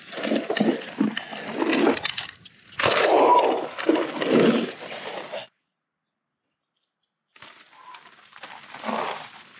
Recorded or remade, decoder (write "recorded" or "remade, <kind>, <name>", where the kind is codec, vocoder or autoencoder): recorded